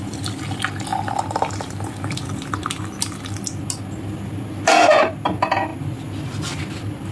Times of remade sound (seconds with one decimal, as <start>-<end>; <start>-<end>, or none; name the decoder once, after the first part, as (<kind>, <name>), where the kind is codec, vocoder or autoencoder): none